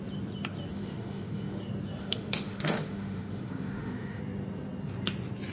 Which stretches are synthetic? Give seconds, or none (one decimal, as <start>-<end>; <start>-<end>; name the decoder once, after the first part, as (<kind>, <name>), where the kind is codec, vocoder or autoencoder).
0.7-1.6 (autoencoder, DAC-VAE); 2.0-4.2